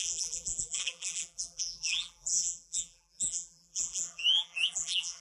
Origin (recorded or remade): remade